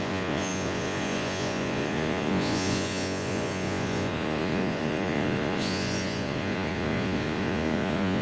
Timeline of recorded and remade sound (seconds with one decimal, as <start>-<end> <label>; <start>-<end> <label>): 0.0-8.2 remade